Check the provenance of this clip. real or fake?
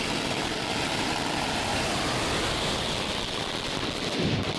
real